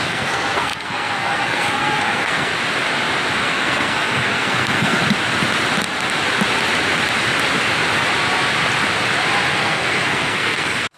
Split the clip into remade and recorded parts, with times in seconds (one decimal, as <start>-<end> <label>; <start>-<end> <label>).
0.0-2.5 remade; 2.5-3.4 recorded; 3.4-5.0 remade; 5.0-9.5 recorded; 9.5-11.0 remade